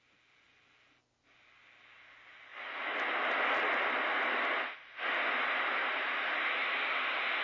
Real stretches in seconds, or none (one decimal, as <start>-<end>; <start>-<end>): 0.0-7.4